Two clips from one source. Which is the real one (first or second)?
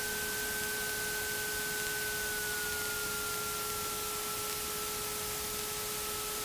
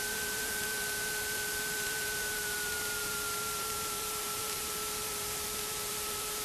first